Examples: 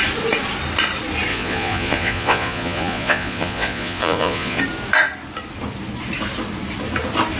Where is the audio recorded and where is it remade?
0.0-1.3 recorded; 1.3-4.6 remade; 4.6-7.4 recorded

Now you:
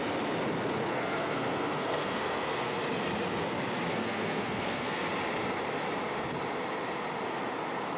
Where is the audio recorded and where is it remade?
0.0-0.9 recorded; 0.9-2.8 remade; 2.8-3.9 recorded; 3.9-5.1 remade; 5.1-8.0 recorded

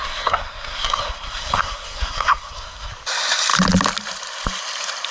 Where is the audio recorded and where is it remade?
0.0-2.9 remade; 2.9-5.1 recorded